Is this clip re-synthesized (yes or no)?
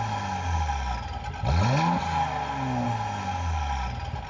no